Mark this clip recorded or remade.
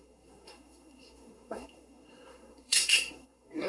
remade